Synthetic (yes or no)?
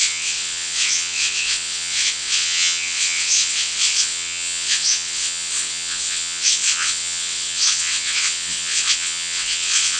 yes